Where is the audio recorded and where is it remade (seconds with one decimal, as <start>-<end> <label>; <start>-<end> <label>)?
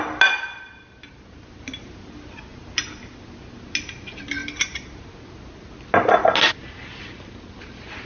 0.0-8.1 recorded